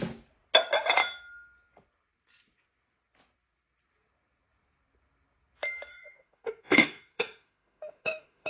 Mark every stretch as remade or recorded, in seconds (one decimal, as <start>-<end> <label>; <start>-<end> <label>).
0.0-5.9 recorded; 5.9-8.5 remade